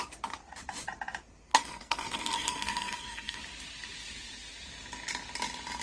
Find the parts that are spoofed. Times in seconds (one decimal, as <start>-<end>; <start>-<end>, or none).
1.5-3.4